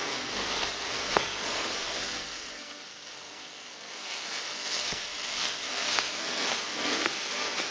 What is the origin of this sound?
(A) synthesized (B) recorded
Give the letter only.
A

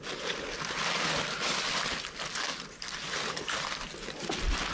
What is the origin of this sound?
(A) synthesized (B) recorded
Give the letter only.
B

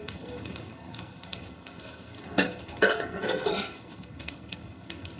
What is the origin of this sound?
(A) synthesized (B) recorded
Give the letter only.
A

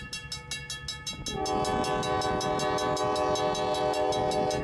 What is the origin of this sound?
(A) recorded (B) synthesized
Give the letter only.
A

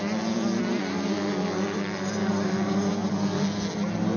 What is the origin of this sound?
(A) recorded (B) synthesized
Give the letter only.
A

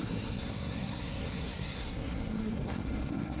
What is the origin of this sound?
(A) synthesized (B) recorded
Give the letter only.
A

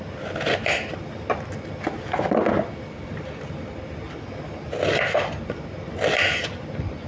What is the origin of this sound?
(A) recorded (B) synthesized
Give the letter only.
A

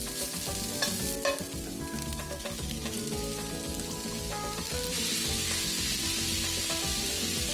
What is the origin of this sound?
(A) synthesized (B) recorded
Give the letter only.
B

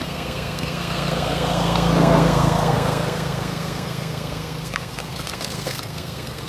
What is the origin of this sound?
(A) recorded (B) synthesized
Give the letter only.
B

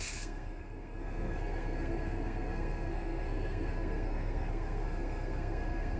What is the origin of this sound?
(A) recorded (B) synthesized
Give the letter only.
B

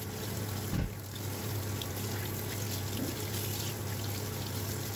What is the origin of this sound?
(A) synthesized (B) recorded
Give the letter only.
B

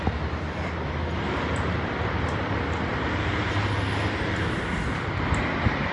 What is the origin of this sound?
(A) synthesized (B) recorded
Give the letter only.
B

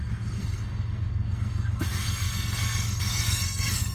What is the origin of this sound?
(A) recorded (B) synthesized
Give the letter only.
B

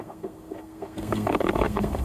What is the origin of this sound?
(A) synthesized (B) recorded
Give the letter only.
A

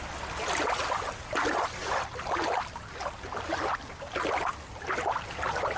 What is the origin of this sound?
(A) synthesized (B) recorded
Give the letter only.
B